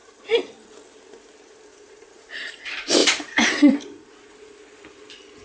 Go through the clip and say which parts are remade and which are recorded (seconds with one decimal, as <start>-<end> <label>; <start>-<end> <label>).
0.0-1.7 recorded; 1.7-2.6 remade; 2.6-3.0 recorded; 3.0-4.1 remade; 4.1-5.4 recorded

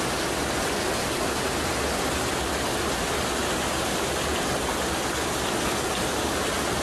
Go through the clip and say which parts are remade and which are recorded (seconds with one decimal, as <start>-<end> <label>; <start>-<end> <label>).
0.0-3.4 recorded; 3.4-4.1 remade; 4.1-6.8 recorded

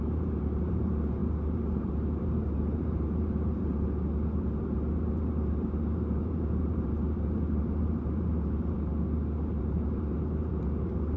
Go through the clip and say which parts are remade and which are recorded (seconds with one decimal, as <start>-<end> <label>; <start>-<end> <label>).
0.0-8.9 remade; 8.9-9.6 recorded; 9.6-11.2 remade

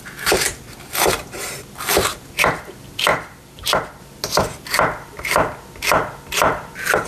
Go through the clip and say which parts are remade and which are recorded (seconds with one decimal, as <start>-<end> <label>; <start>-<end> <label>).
0.0-3.1 recorded; 3.1-4.0 remade; 4.0-7.1 recorded

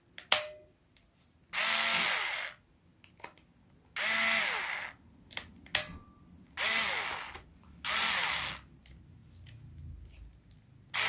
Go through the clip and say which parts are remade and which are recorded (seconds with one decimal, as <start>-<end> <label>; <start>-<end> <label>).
0.0-11.1 recorded